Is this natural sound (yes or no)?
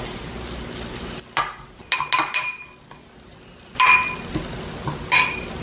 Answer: yes